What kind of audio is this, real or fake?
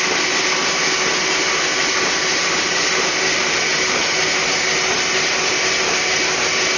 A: real